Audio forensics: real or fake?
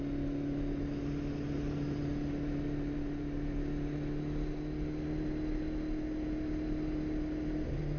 real